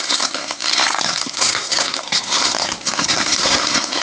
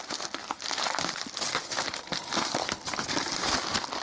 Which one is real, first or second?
second